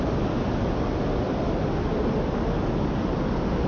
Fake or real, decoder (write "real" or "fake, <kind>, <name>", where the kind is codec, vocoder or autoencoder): real